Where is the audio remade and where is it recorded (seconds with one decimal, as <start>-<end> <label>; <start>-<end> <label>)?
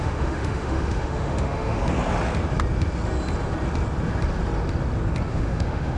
0.0-1.8 remade; 1.8-5.3 recorded; 5.3-6.0 remade